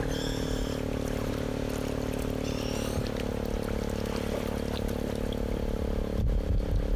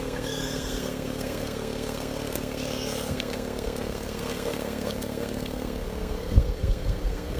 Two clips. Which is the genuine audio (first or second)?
first